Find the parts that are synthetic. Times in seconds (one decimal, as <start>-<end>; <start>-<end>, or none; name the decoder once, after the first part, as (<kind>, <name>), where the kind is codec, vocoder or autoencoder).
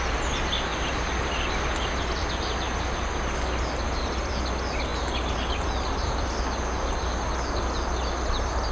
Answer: none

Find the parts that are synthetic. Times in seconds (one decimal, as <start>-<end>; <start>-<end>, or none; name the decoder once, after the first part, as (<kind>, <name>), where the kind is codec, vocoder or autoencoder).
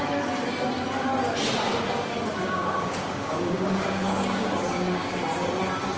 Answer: 2.4-5.2 (codec, DAC)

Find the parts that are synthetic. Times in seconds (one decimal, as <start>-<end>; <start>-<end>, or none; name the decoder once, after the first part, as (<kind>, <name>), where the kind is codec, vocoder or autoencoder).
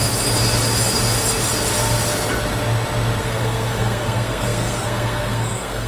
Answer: 3.2-5.9 (codec, SNAC)